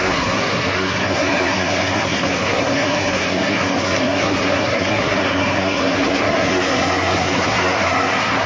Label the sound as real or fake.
fake